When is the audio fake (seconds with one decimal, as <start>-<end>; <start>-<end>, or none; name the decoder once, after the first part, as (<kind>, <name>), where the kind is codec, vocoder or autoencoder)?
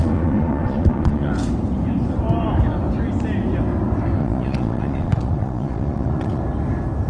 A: 0.0-1.3 (vocoder, Vocos); 4.2-6.4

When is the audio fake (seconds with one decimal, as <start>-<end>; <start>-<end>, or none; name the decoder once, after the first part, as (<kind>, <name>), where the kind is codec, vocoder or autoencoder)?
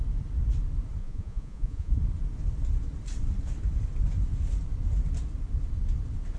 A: 1.0-2.0 (vocoder, Vocos)